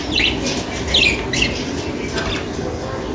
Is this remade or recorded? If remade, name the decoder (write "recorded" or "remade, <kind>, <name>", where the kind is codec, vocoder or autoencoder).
recorded